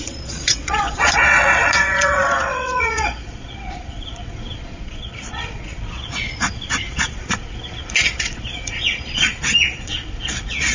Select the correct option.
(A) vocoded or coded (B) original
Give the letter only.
A